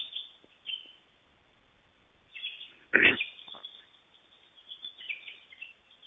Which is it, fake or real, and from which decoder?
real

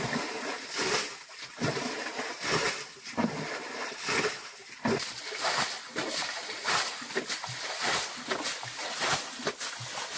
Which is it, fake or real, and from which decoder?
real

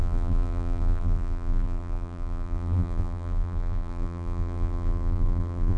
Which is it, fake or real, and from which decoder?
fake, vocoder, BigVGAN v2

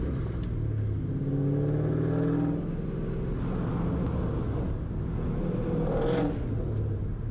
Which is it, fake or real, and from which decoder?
real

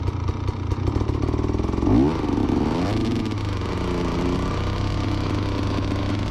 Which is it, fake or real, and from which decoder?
real